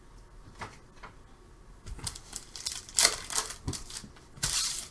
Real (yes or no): yes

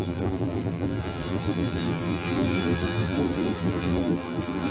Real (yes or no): no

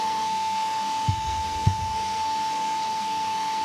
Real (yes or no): no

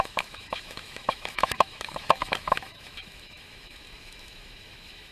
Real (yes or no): no